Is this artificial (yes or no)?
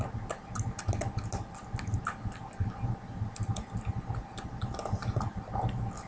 no